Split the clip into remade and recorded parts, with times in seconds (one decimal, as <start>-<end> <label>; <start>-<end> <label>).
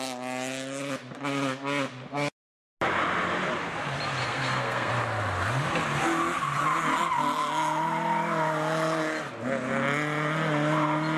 0.0-4.2 recorded; 4.2-4.9 remade; 4.9-11.2 recorded